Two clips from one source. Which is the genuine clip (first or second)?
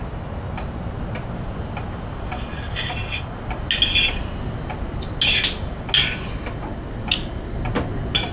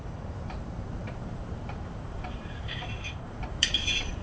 first